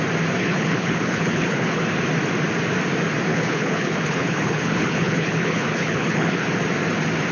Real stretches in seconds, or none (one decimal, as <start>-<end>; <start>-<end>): 0.0-0.4; 1.8-3.3; 6.5-7.3